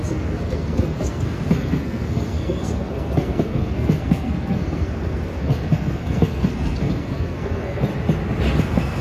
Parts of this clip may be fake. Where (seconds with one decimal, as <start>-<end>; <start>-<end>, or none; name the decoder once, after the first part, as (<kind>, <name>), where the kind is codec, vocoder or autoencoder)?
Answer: 0.0-7.9 (codec, SNAC); 8.6-9.0